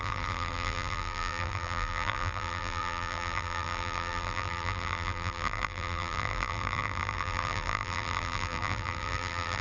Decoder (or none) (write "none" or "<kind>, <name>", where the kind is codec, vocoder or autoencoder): vocoder, BigVGAN v2